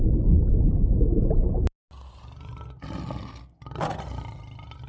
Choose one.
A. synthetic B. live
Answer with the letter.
B